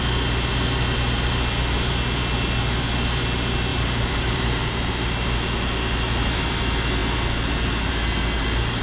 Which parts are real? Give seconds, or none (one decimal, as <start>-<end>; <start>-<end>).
0.0-3.7; 4.9-8.8